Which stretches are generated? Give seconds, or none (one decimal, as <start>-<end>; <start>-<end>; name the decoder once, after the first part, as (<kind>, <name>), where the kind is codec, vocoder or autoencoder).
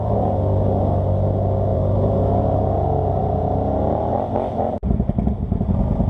1.7-2.6 (vocoder, BigVGAN v2); 3.2-6.1